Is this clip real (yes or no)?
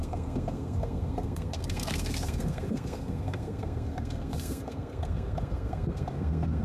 no